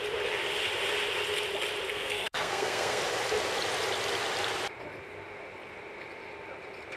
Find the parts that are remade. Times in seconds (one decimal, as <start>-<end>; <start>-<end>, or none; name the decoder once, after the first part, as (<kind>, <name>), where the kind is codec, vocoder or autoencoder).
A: 1.9-3.0 (codec, SNAC)